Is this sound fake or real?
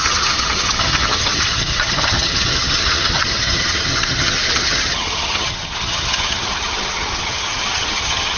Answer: fake